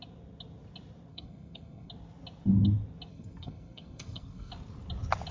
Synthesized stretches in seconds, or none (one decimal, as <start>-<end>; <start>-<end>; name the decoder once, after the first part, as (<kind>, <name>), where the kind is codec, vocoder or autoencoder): 1.1-1.9 (codec, SNAC); 3.1-4.5